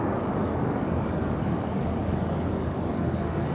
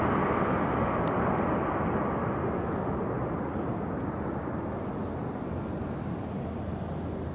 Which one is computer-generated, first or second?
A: first